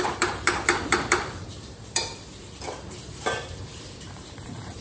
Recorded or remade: remade